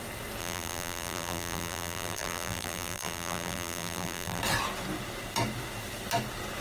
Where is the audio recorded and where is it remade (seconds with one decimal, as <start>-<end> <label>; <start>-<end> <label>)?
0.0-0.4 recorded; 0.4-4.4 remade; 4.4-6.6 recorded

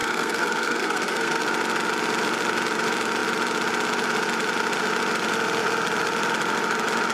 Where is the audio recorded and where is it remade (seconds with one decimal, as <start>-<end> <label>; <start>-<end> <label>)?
0.0-1.4 remade; 1.4-7.1 recorded

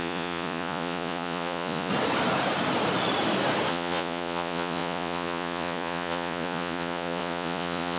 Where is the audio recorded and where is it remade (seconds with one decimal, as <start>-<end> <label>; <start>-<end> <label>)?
0.0-1.9 remade; 1.9-3.7 recorded; 3.7-8.0 remade

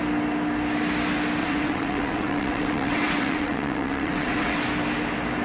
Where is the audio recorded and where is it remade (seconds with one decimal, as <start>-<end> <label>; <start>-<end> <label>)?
0.0-1.4 recorded; 1.4-4.6 remade; 4.6-5.4 recorded